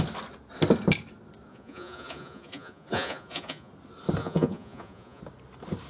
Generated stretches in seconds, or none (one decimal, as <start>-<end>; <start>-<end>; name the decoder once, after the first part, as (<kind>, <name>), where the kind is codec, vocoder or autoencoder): 1.5-3.7 (vocoder, Vocos); 4.2-5.2